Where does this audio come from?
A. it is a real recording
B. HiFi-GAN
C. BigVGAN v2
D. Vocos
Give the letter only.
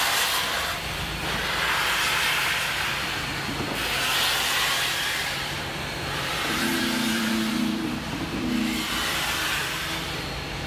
C